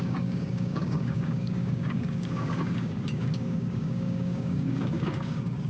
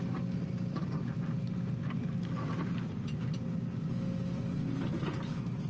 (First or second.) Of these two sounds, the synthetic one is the first